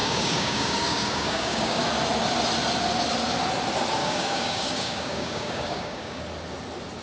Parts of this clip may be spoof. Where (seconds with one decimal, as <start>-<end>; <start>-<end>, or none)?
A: 0.0-1.8; 4.0-6.2